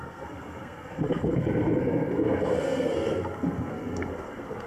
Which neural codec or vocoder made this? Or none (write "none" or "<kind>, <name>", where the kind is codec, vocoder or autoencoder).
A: codec, SNAC